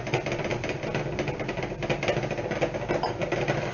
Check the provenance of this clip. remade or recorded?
recorded